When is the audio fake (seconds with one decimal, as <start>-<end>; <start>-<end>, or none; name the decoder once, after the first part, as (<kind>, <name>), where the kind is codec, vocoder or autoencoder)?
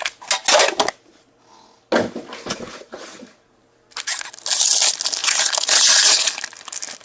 2.5-3.6 (vocoder, Vocos); 5.2-6.3